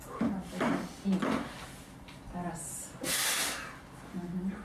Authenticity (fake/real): real